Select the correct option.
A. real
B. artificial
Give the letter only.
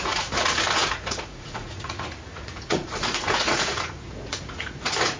B